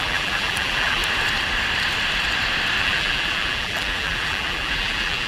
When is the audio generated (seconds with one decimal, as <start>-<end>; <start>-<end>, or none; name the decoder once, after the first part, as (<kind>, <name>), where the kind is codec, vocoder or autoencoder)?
0.0-1.0 (vocoder, BigVGAN v2); 2.8-5.3